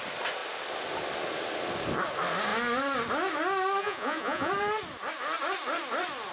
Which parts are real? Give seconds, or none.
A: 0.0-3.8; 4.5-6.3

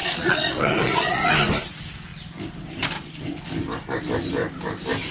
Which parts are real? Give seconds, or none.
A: 1.3-5.1

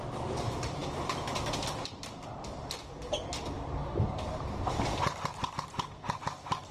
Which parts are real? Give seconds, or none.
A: 0.0-6.7

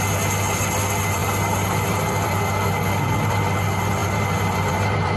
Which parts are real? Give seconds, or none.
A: 0.0-1.2; 2.4-4.0

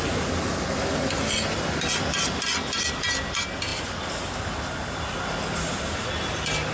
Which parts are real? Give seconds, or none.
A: 0.0-6.7